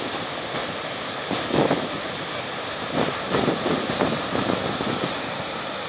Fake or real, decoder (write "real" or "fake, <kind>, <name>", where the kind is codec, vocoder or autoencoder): fake, vocoder, BigVGAN v2